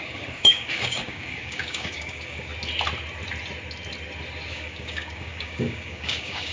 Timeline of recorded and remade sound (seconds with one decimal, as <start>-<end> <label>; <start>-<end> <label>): 0.0-2.5 remade; 2.5-4.5 recorded; 4.5-6.5 remade